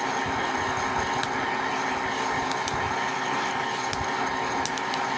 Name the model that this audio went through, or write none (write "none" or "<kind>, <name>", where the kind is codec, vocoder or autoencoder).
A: none